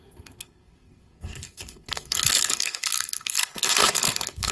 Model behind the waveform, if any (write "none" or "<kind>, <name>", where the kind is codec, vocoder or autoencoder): codec, SNAC